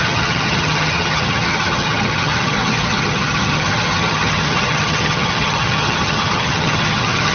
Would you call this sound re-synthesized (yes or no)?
yes